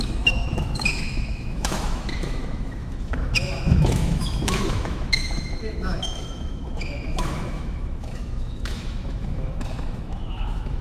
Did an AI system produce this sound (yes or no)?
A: yes